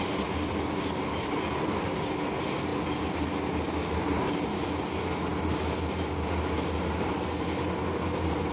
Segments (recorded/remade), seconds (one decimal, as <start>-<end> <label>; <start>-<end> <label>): 0.0-8.5 recorded